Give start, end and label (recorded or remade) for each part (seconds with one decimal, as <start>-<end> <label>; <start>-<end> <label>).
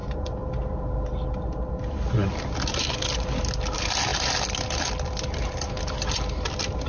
0.0-6.9 recorded